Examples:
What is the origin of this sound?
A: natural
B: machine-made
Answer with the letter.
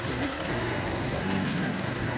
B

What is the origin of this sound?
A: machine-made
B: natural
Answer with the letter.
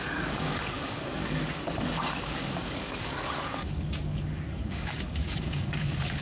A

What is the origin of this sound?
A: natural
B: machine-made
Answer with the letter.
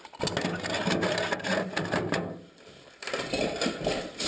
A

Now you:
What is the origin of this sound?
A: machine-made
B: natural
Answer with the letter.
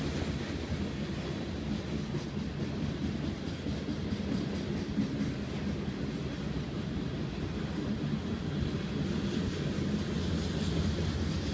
B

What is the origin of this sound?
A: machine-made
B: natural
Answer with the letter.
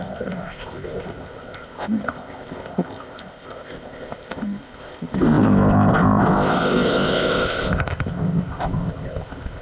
A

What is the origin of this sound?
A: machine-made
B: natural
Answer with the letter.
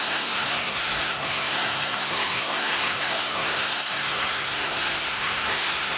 A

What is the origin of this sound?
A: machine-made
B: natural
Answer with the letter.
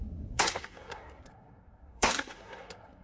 A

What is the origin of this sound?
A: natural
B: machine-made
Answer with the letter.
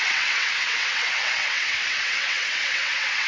B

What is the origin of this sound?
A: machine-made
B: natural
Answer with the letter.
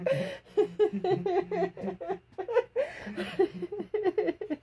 B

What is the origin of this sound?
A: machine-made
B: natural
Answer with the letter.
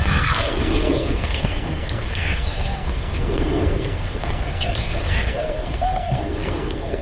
A